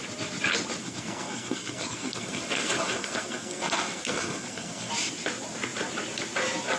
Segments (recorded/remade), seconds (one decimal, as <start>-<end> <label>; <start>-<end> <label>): 0.0-0.8 recorded; 0.8-4.9 remade; 4.9-6.8 recorded

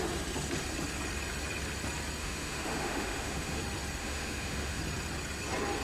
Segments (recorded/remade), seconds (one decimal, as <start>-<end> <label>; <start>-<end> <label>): 0.0-2.2 recorded; 2.2-3.6 remade; 3.6-4.0 recorded; 4.0-4.8 remade; 4.8-5.8 recorded

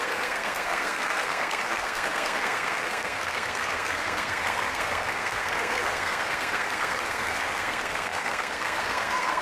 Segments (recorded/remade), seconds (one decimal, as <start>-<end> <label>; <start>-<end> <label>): 0.0-9.4 remade

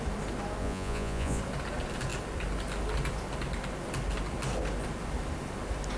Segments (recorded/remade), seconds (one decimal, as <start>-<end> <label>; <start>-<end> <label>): 0.0-0.6 recorded; 0.6-1.4 remade; 1.4-6.0 recorded